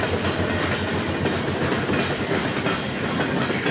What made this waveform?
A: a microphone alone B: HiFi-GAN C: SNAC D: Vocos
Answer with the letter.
A